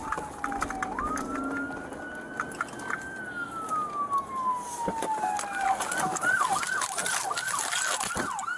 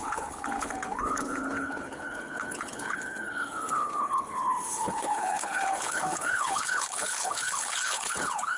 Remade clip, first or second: second